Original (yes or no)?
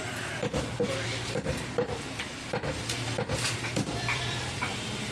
no